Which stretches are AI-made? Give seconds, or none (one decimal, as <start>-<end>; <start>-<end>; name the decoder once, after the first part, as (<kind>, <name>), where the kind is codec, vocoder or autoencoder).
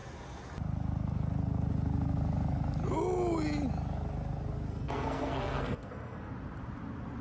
4.7-6.3 (codec, SNAC)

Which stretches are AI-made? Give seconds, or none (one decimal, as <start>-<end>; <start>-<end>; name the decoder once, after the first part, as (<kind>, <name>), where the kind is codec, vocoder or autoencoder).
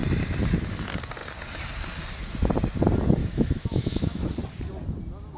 3.2-4.3 (autoencoder, DAC-VAE)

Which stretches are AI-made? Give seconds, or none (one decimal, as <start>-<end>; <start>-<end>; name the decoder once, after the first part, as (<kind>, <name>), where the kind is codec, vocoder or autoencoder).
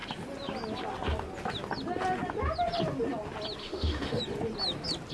3.6-4.2 (autoencoder, DAC-VAE)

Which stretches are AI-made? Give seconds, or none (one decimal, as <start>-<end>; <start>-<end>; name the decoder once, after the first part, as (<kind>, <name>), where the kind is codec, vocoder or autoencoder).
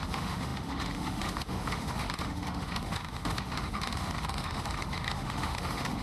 0.0-6.0 (autoencoder, DAC-VAE)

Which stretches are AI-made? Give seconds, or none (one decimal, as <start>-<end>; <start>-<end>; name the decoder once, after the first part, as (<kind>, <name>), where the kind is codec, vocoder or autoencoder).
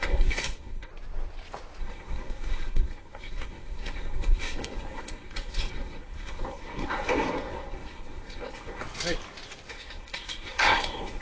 0.0-0.9 (codec, SNAC); 1.8-8.8; 9.7-11.2